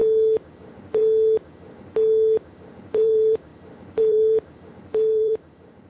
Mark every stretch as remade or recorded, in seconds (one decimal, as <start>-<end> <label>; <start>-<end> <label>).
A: 0.0-0.6 recorded; 0.6-1.0 remade; 1.0-2.5 recorded; 2.5-5.9 remade